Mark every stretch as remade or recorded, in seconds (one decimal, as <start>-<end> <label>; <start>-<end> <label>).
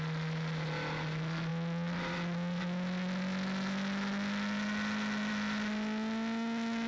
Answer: 0.0-6.9 recorded